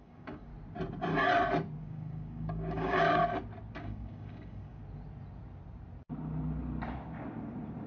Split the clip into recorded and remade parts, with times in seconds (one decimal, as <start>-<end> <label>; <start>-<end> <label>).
0.0-0.5 remade; 0.5-1.8 recorded; 1.8-3.2 remade; 3.2-3.8 recorded; 3.8-4.8 remade; 4.8-7.9 recorded